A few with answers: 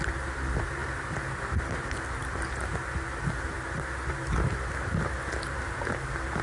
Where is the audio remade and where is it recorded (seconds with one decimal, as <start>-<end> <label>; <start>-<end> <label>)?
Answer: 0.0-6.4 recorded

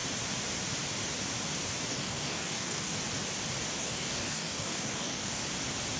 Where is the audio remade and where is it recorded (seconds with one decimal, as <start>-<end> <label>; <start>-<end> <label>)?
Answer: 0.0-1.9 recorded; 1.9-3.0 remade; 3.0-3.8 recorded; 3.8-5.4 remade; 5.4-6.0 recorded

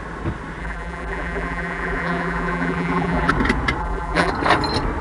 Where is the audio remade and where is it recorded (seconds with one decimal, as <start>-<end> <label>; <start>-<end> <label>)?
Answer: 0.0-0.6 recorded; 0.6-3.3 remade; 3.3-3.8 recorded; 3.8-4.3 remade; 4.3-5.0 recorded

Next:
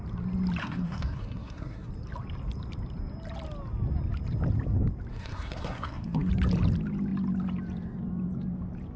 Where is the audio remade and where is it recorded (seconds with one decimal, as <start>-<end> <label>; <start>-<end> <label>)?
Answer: 0.0-0.6 recorded; 0.6-1.9 remade; 1.9-5.1 recorded; 5.1-6.3 remade; 6.3-9.0 recorded